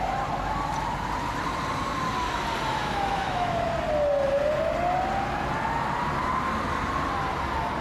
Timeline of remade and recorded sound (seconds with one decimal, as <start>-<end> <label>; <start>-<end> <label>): 0.0-2.7 recorded; 2.7-3.7 remade; 3.7-7.8 recorded